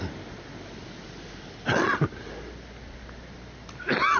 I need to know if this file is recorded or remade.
recorded